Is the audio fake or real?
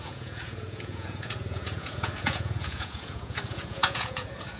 fake